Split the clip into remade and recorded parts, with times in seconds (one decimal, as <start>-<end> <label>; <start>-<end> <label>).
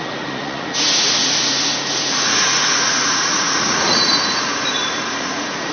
0.0-5.7 remade